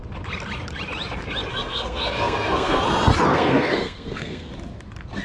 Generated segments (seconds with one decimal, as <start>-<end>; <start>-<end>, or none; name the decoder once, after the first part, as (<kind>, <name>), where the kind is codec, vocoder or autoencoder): 1.5-2.8 (codec, SNAC); 3.3-4.5